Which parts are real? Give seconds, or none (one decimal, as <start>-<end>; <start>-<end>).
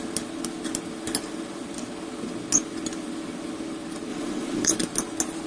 0.0-4.1; 4.7-5.5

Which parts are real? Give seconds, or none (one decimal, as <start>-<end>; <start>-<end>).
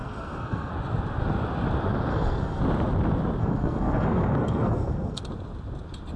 0.7-2.1; 2.6-3.4; 5.2-6.2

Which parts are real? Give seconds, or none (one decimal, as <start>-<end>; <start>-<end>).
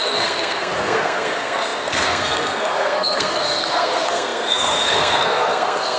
none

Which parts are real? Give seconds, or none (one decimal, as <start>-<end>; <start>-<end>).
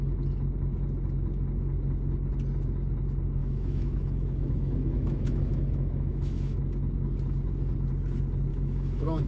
0.0-3.4; 6.6-8.5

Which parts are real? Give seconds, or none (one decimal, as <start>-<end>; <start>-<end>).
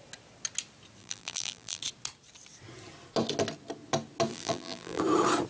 0.0-1.0; 1.8-4.3; 5.0-5.5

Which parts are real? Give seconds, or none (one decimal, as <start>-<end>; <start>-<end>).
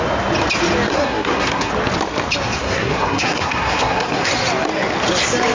0.0-0.9; 1.7-2.6; 4.3-5.5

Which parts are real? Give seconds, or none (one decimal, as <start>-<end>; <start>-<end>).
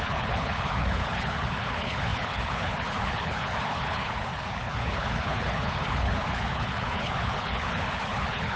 none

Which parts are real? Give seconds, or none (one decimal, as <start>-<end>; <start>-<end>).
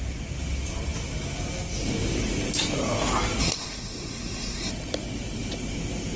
0.0-3.4; 4.7-6.2